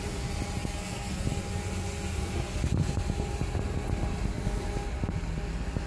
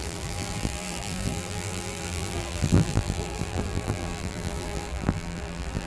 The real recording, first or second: first